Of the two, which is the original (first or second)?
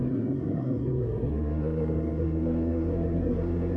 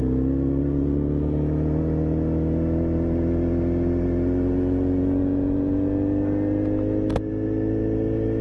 second